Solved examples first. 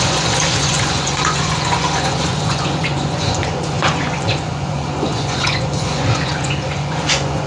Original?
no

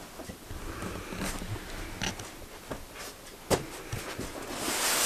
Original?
yes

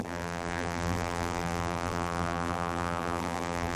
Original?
no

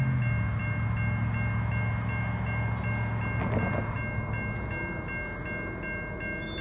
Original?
yes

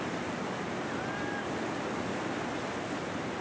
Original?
no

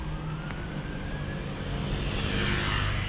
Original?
yes